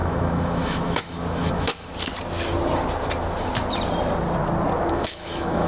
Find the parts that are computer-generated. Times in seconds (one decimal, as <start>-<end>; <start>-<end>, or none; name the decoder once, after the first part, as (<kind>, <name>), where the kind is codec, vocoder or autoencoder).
0.0-1.9 (autoencoder, DAC-VAE); 4.9-5.7